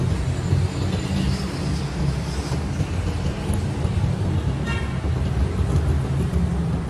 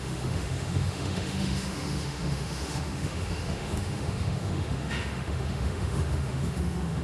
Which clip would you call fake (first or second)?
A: second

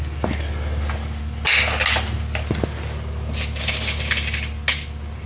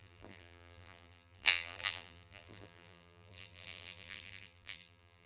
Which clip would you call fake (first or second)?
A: second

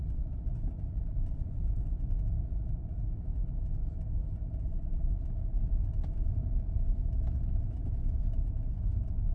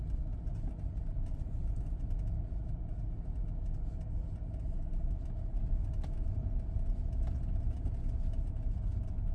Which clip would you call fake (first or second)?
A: first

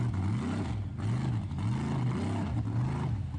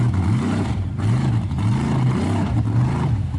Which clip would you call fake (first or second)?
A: second